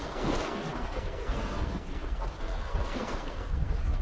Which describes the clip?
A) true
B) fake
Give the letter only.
B